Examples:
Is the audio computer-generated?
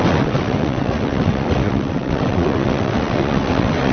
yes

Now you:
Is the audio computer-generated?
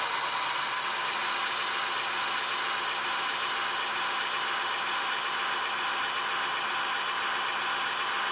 no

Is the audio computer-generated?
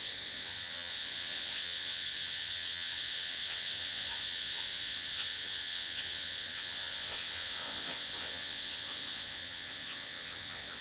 yes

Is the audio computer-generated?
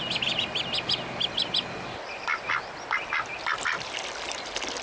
no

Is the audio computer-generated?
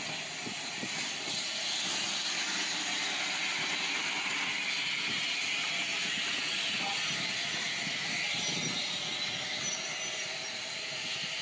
no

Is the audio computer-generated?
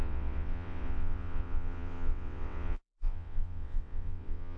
yes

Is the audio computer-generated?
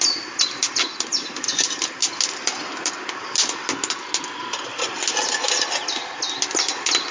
no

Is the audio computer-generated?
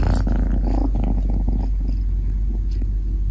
no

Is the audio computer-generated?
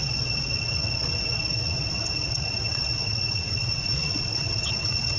yes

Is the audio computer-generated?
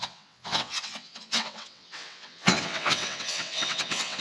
yes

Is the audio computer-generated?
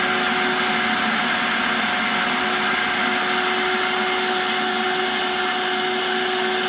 no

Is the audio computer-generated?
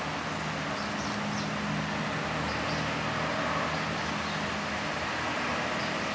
no